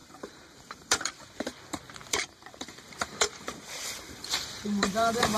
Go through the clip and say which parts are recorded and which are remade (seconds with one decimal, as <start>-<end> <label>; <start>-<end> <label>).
0.0-1.3 remade; 1.3-2.0 recorded; 2.0-5.4 remade